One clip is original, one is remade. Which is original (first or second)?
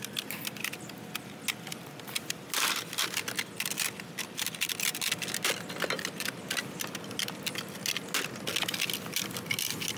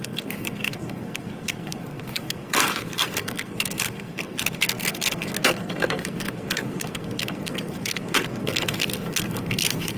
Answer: first